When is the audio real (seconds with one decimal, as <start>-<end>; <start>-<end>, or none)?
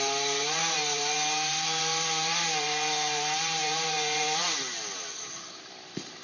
4.4-5.5